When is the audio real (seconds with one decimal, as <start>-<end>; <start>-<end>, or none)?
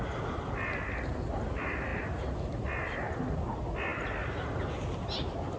0.0-5.6